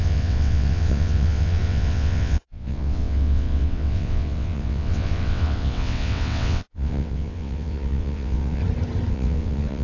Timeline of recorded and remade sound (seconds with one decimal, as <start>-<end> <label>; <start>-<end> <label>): 0.0-8.6 remade; 8.6-9.1 recorded; 9.1-9.8 remade